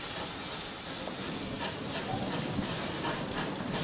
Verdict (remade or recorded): recorded